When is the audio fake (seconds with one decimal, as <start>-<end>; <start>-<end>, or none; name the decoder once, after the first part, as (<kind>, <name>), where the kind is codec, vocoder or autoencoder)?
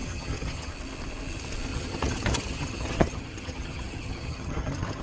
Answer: 0.0-0.7 (vocoder, HiFi-GAN); 1.7-5.0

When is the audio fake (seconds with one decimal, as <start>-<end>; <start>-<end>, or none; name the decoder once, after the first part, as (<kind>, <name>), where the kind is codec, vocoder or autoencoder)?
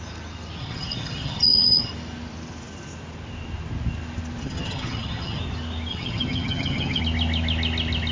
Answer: 0.6-1.9 (vocoder, HiFi-GAN); 4.4-5.4; 5.9-7.0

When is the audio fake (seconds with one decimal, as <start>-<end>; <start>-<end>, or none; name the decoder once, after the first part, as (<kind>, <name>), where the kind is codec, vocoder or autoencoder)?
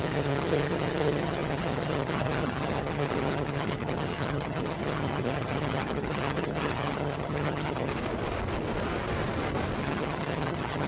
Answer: 0.0-7.9 (vocoder, HiFi-GAN); 9.8-10.9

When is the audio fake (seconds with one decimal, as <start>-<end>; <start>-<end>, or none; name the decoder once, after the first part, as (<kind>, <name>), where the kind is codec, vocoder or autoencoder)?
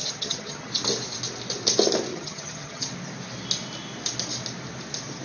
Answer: 0.0-0.7 (vocoder, HiFi-GAN); 2.1-2.8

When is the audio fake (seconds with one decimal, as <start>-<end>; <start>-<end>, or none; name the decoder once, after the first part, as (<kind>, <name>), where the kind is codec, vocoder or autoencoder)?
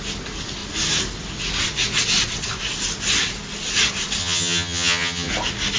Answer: 4.2-5.3 (vocoder, HiFi-GAN)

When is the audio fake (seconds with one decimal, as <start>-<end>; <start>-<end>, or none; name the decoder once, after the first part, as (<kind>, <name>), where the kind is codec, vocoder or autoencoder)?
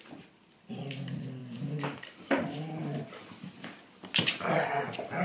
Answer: none